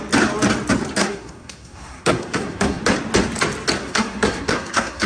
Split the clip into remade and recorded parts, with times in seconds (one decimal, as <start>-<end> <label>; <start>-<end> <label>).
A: 0.0-1.0 recorded; 1.0-2.8 remade; 2.8-3.8 recorded; 3.8-5.1 remade